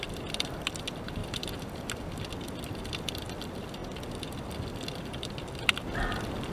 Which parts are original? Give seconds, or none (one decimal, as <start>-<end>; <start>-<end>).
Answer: 1.2-3.0; 3.8-4.8